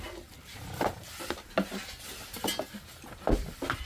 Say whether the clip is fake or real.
real